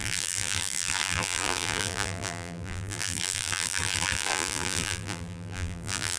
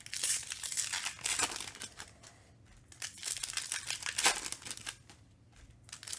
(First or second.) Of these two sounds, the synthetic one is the first